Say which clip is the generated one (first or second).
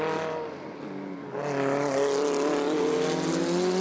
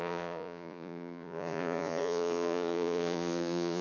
second